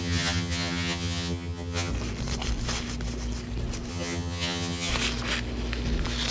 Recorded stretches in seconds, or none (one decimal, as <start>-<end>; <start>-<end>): 1.9-3.9; 4.9-6.3